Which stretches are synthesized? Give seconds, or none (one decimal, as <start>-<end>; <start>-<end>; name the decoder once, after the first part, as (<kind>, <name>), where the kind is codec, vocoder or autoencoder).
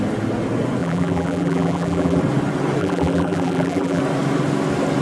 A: 0.8-2.2 (vocoder, BigVGAN v2); 2.8-4.0